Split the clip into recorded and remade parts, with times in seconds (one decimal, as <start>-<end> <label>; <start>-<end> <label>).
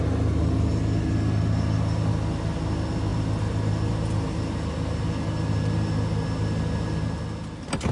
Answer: 0.0-7.9 recorded